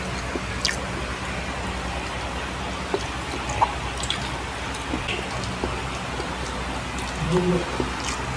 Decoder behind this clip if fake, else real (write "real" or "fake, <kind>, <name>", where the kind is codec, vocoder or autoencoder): real